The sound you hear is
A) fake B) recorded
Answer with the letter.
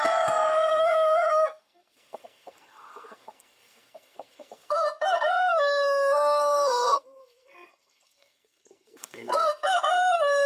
A